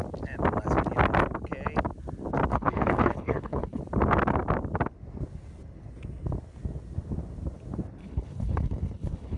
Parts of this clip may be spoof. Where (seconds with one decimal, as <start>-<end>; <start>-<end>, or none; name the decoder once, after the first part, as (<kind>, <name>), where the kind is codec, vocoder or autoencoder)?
2.5-3.8 (codec, HILCodec); 8.0-9.4